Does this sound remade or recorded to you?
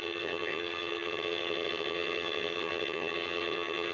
remade